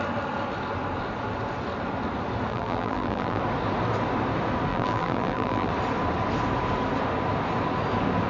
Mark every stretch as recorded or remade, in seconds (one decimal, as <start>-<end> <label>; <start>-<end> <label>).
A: 0.0-2.5 recorded; 2.5-3.4 remade; 3.4-4.7 recorded; 4.7-5.7 remade; 5.7-8.3 recorded

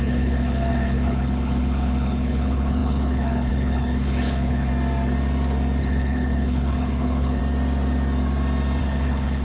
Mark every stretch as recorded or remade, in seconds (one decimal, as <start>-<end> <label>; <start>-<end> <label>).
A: 0.0-4.7 remade; 4.7-5.8 recorded; 5.8-7.4 remade; 7.4-8.8 recorded; 8.8-9.4 remade

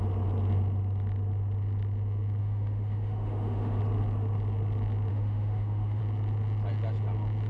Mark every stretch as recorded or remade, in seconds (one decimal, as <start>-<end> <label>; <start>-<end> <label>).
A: 0.0-2.4 recorded; 2.4-3.8 remade; 3.8-5.1 recorded; 5.1-6.0 remade; 6.0-7.5 recorded

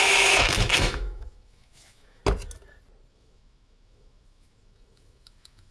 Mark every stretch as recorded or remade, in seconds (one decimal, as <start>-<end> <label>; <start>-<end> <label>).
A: 0.0-2.2 remade; 2.2-3.1 recorded; 3.1-5.7 remade

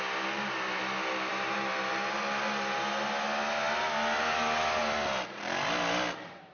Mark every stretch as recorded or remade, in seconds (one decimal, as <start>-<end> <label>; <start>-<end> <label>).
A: 0.0-6.5 recorded

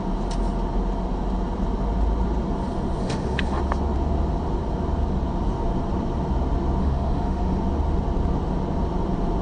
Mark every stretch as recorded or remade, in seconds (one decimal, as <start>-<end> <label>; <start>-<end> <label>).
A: 0.0-3.0 recorded; 3.0-3.6 remade; 3.6-6.8 recorded; 6.8-7.6 remade; 7.6-9.4 recorded

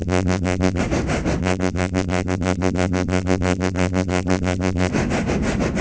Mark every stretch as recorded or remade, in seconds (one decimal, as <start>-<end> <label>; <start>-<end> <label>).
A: 0.0-0.8 remade; 0.8-1.4 recorded; 1.4-4.9 remade; 4.9-5.8 recorded